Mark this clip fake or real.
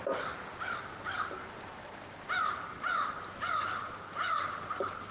real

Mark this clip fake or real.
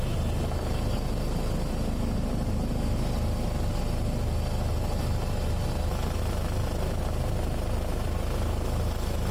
real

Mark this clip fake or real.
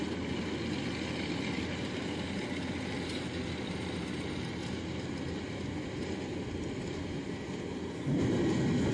real